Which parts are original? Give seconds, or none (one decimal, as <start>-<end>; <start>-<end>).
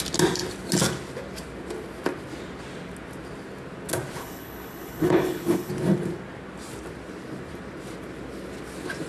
0.0-4.2; 5.7-9.1